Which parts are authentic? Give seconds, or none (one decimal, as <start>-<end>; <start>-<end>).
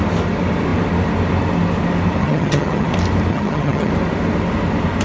0.0-2.2; 2.9-3.3; 3.9-5.0